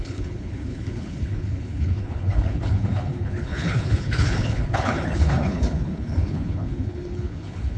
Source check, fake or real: fake